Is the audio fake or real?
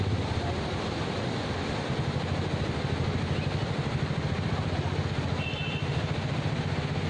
real